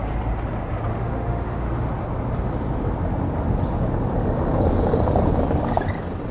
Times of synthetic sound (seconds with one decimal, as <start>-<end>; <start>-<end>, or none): 0.9-1.6